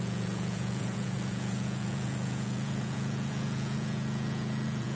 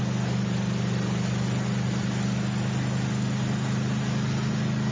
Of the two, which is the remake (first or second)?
first